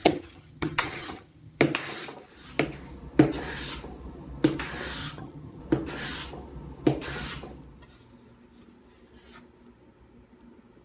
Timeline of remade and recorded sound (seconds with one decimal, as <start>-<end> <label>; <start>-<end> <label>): 0.0-1.6 remade; 1.6-5.0 recorded; 5.0-5.6 remade; 5.6-10.8 recorded